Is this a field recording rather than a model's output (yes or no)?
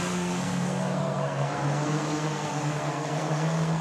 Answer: no